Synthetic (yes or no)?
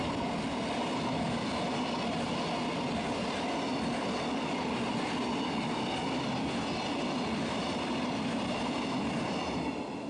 no